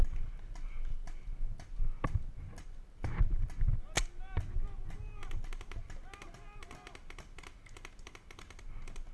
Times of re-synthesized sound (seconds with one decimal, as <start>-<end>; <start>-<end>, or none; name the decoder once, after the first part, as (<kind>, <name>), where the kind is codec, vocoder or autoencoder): none